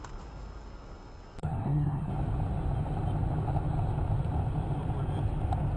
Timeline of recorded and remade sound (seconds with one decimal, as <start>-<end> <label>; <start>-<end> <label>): 0.0-1.4 recorded; 1.4-2.1 remade; 2.1-5.8 recorded